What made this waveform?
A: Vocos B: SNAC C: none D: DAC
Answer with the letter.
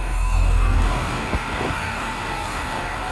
D